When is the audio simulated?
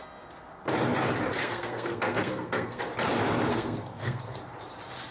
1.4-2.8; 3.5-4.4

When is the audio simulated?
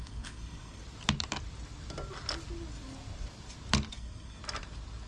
0.0-0.8; 3.9-4.4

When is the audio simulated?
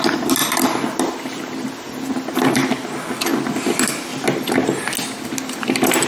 none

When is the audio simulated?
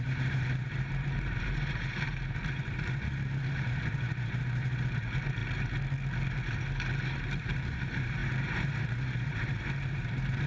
0.0-5.4; 7.0-10.5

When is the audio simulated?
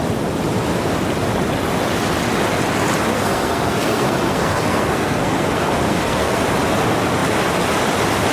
3.1-6.4